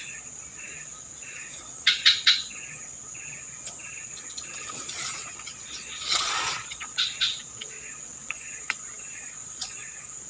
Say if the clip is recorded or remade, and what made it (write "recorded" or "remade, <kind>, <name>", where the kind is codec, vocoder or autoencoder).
remade, vocoder, Vocos